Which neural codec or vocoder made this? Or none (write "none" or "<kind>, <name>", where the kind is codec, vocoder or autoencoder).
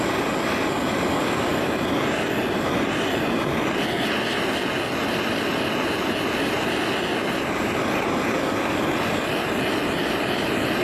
none